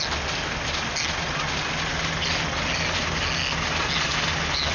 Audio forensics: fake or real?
real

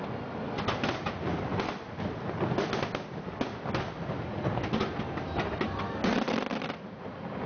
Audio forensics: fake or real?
real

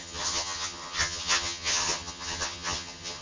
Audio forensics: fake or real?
fake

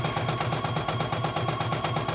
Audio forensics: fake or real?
real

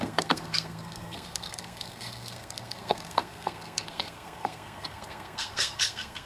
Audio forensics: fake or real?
fake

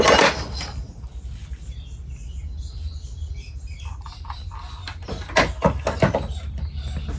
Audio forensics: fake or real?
real